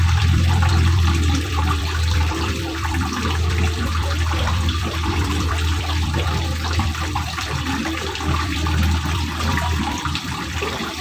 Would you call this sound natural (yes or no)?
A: no